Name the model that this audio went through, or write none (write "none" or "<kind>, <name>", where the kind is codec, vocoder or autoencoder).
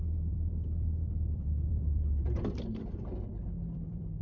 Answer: vocoder, BigVGAN v2